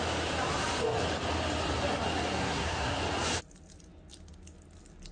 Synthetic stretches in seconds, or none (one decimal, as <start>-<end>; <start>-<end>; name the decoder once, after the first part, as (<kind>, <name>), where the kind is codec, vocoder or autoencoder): 2.4-3.0 (codec, SNAC)